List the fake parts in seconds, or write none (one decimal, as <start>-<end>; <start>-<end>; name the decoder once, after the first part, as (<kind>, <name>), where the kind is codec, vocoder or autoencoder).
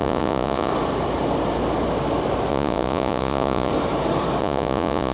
0.0-0.7 (vocoder, Vocos); 2.5-3.7; 4.4-5.1